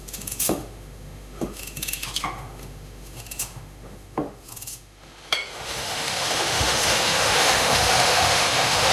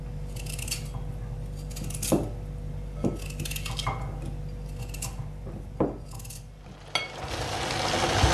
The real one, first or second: second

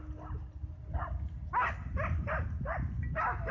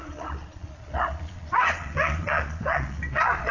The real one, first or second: first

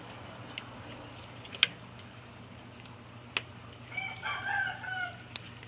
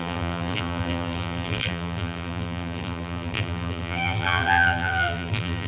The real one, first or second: first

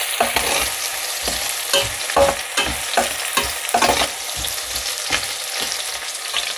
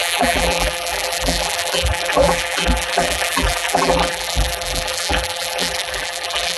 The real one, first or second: first